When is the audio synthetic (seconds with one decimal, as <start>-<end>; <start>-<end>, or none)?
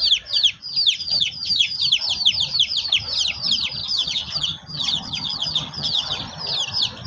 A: 1.0-1.8; 3.8-6.2